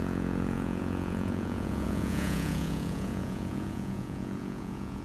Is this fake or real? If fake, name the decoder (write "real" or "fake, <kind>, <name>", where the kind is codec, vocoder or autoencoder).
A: fake, vocoder, Vocos